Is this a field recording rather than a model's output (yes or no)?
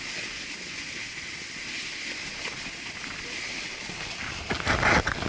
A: yes